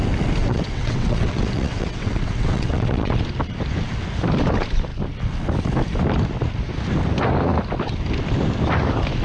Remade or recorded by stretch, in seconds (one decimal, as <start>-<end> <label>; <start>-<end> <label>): 0.0-0.4 recorded; 0.4-3.2 remade; 3.2-9.2 recorded